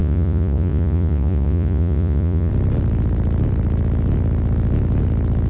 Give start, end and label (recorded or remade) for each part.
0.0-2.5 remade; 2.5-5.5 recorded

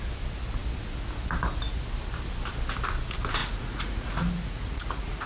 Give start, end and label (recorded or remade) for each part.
0.0-3.4 recorded; 3.4-5.3 remade

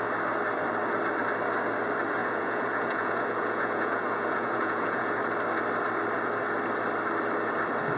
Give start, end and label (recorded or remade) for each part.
0.0-2.2 recorded; 2.2-5.1 remade; 5.1-8.0 recorded

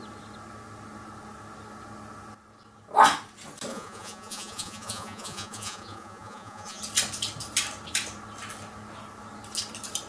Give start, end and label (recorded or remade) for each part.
0.0-3.7 recorded; 3.7-6.8 remade; 6.8-10.1 recorded

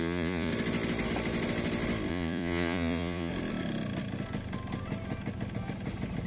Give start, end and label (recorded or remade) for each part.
0.0-0.5 remade; 0.5-2.1 recorded; 2.1-3.3 remade; 3.3-6.3 recorded

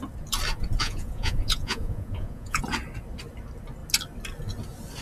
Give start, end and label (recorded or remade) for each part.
0.0-0.8 recorded; 0.8-2.6 remade; 2.6-5.0 recorded

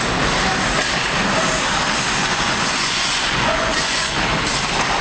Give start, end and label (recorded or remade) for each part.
0.0-2.2 recorded; 2.2-4.2 remade; 4.2-5.0 recorded